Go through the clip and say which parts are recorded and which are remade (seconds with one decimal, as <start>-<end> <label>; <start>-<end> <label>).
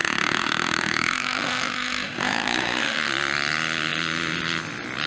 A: 0.0-3.1 remade; 3.1-5.1 recorded